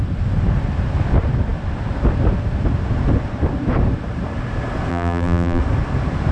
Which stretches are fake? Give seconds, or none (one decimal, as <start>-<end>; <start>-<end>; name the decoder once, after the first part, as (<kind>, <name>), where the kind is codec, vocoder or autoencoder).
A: 4.9-5.6 (vocoder, BigVGAN v2)